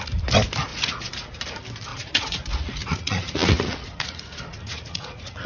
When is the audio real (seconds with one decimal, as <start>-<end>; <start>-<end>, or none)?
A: 0.0-0.7; 1.4-1.9